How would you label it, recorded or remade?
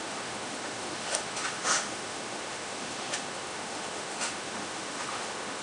remade